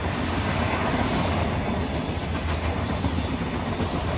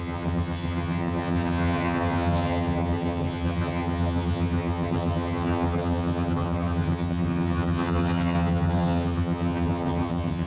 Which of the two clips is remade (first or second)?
second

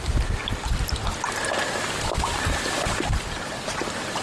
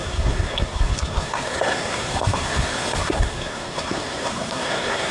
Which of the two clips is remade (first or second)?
second